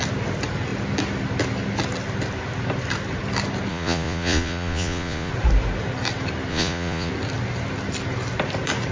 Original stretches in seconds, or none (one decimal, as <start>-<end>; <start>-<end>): 0.0-3.7; 5.3-6.5; 7.1-8.9